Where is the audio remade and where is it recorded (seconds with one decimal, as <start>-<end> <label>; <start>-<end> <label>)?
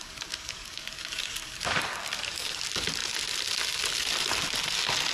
0.0-2.6 remade; 2.6-5.1 recorded